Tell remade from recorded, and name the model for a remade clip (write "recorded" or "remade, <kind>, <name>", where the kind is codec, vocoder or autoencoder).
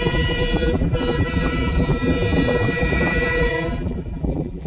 remade, vocoder, BigVGAN v2